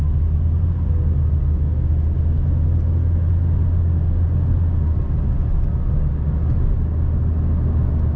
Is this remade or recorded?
recorded